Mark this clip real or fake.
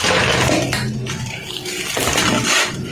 real